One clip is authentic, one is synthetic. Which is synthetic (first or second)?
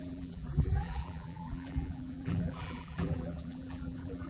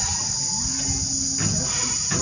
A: first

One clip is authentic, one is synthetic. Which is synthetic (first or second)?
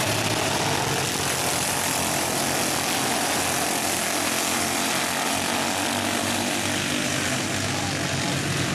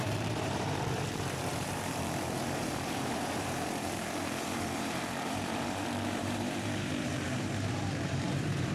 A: second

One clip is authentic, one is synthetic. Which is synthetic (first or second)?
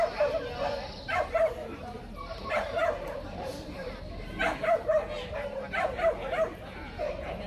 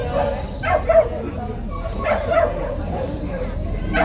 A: first